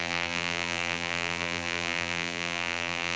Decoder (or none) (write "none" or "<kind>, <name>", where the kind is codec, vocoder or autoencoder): vocoder, BigVGAN v2